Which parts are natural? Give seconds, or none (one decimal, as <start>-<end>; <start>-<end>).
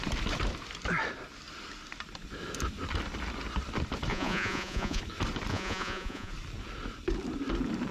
0.0-4.1; 5.0-5.5; 6.3-7.9